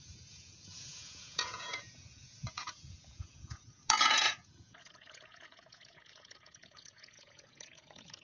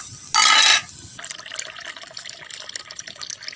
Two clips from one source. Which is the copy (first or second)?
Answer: first